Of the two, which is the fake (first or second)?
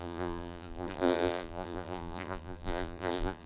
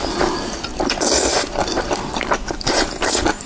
first